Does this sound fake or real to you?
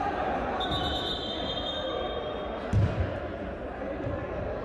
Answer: fake